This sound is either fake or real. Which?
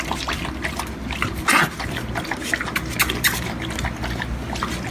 real